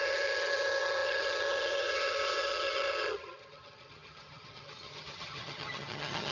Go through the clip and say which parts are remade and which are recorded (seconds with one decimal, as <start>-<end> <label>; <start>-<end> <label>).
0.0-6.3 remade